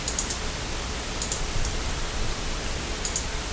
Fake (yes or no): no